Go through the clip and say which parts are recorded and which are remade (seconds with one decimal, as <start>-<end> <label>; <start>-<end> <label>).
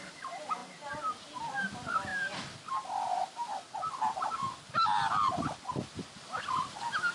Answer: 0.0-7.1 recorded